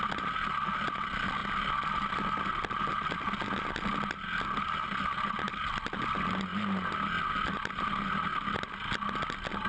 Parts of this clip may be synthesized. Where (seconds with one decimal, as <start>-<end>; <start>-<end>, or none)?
none